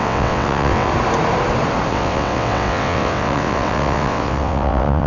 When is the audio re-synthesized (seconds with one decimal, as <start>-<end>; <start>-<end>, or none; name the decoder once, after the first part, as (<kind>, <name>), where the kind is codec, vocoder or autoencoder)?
0.0-0.9 (vocoder, WaveNeXt); 1.9-5.1